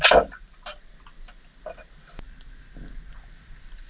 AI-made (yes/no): no